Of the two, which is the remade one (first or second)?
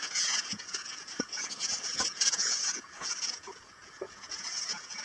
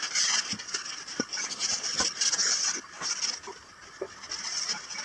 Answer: first